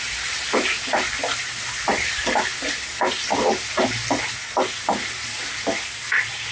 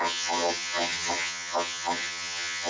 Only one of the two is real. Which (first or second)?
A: first